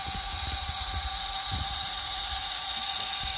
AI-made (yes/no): yes